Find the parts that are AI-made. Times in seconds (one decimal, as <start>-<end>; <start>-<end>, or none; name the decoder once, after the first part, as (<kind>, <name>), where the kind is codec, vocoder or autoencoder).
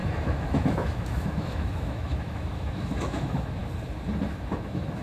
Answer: 0.0-3.6 (autoencoder, DAC-VAE); 4.3-5.0